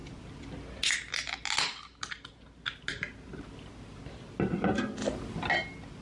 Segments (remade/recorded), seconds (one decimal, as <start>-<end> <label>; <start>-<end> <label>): 0.0-6.0 recorded